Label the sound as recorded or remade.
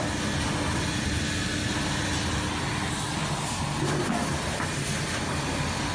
recorded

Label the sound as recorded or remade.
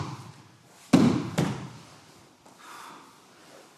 recorded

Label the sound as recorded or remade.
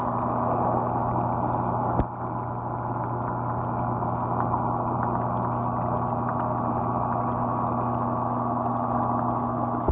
recorded